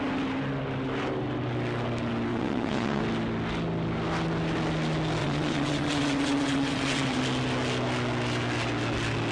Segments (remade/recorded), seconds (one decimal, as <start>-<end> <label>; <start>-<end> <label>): 0.0-2.3 recorded; 2.3-3.0 remade; 3.0-5.2 recorded; 5.2-7.2 remade; 7.2-9.3 recorded